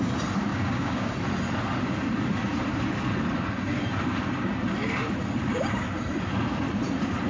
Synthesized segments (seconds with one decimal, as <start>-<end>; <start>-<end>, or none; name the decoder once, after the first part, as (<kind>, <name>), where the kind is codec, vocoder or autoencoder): 0.5-1.1 (codec, DAC)